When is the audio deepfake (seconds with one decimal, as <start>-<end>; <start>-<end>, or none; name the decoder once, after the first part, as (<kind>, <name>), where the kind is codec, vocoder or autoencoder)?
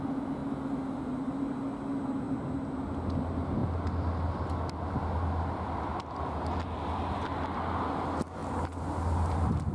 none